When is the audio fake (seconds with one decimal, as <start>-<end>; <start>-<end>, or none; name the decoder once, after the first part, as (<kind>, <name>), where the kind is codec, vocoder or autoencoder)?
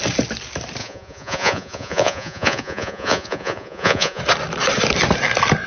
0.8-4.2 (vocoder, Vocos)